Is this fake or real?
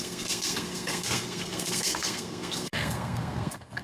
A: fake